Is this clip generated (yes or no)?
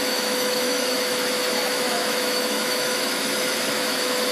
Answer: yes